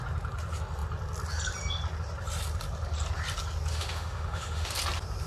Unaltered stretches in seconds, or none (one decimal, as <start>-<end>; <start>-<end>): 0.0-3.7; 4.7-5.3